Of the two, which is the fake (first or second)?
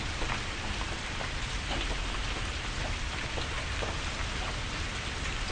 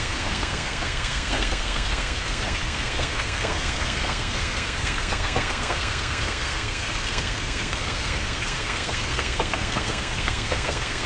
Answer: second